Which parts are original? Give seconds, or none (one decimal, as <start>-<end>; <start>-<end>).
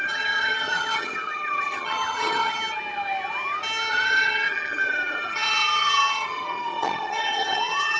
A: 2.6-3.9